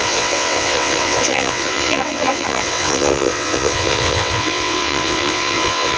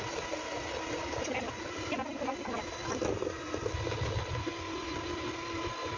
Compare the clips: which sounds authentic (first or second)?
second